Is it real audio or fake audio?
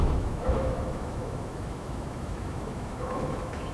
fake